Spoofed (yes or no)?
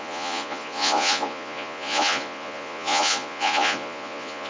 yes